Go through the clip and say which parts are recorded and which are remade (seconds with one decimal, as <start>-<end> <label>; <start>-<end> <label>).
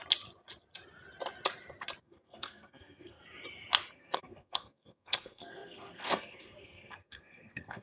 0.0-2.0 recorded; 2.0-3.2 remade; 3.2-3.9 recorded; 3.9-7.8 remade